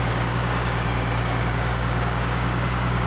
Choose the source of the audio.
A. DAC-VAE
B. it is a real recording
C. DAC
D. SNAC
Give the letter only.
C